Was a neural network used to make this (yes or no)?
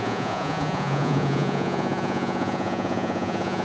yes